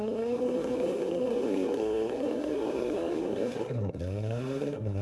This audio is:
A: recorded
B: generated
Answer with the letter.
B